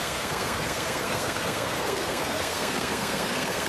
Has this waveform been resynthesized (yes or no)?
yes